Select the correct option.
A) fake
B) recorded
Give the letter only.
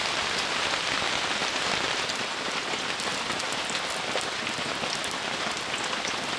A